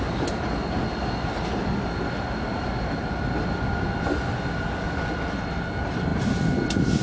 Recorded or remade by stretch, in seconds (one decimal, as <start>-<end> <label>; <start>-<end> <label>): 0.0-7.0 recorded